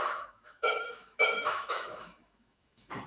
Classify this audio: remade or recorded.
remade